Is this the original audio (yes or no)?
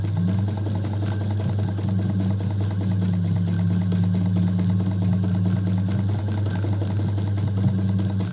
yes